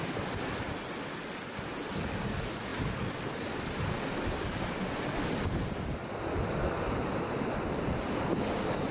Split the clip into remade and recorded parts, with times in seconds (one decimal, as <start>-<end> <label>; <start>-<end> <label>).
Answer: 0.0-8.9 recorded